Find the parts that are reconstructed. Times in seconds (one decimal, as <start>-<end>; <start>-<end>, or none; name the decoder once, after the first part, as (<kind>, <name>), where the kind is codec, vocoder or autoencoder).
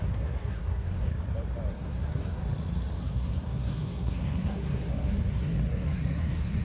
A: 0.0-1.1 (codec, SNAC); 1.7-2.4; 3.0-6.6